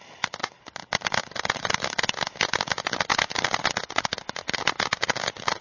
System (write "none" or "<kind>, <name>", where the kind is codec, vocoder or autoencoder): none